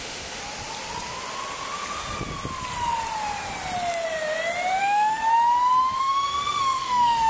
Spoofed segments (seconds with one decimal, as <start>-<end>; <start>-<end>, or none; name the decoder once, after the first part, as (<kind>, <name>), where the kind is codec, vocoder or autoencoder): 0.0-0.4 (autoencoder, DAC-VAE); 4.8-5.2; 6.0-7.3